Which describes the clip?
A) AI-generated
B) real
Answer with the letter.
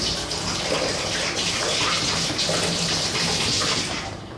B